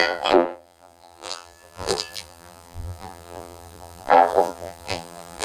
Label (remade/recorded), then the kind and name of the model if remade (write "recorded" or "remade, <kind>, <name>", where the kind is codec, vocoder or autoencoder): remade, vocoder, BigVGAN v2